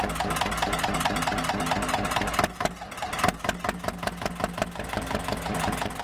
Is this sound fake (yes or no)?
no